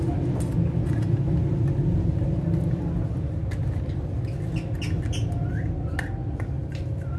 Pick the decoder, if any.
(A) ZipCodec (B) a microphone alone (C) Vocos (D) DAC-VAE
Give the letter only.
B